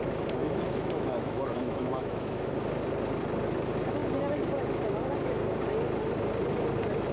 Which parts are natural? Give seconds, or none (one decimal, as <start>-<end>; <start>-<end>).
0.0-0.4; 2.5-7.1